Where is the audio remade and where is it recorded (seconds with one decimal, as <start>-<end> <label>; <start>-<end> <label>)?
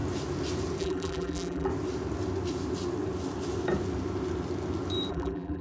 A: 0.0-0.8 recorded; 0.8-1.7 remade; 1.7-5.1 recorded; 5.1-5.6 remade